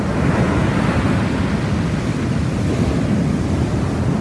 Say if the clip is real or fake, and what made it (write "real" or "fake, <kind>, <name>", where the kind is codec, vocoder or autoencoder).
real